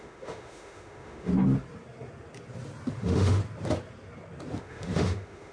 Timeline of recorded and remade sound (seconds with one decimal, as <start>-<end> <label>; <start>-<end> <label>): 0.0-1.3 remade; 1.3-3.0 recorded; 3.0-3.4 remade; 3.4-4.6 recorded; 4.6-5.5 remade